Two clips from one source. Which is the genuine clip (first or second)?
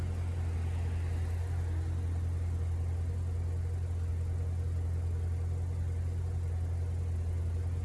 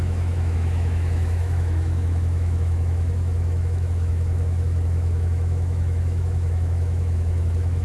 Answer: first